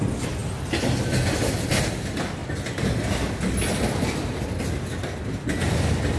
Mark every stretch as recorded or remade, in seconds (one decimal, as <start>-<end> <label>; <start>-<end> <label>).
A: 0.0-6.2 recorded